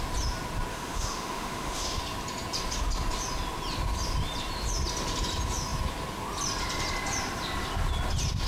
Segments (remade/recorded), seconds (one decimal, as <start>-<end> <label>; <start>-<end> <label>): 0.0-0.7 recorded; 0.7-2.0 remade; 2.0-8.5 recorded